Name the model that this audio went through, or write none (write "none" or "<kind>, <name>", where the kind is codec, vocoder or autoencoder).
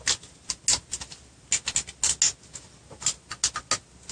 none